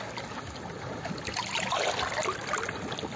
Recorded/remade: recorded